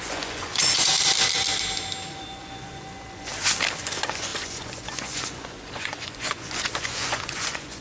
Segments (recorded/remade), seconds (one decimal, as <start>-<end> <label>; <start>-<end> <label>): 0.0-0.9 remade; 0.9-2.1 recorded; 2.1-3.3 remade; 3.3-3.8 recorded; 3.8-7.8 remade